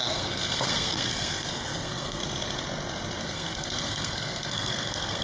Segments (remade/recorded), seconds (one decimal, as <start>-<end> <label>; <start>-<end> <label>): 0.0-2.2 remade; 2.2-3.2 recorded; 3.2-5.2 remade